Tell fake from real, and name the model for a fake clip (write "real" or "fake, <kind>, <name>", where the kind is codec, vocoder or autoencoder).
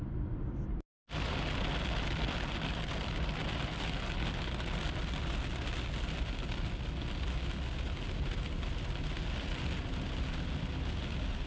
real